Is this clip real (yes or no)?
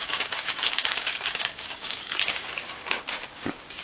no